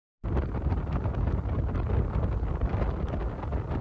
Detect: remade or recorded recorded